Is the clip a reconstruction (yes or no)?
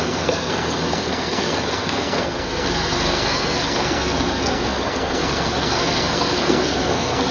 yes